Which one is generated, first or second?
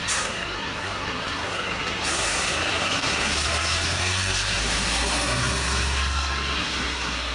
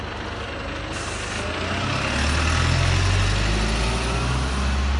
first